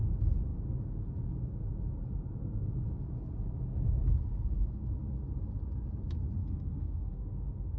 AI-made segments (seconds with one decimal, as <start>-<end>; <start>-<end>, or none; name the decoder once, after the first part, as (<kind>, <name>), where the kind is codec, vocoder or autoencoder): 6.4-7.8 (autoencoder, DAC-VAE)